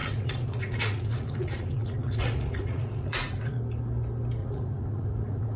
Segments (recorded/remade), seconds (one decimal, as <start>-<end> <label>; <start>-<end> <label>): 0.0-3.4 remade; 3.4-4.4 recorded; 4.4-5.6 remade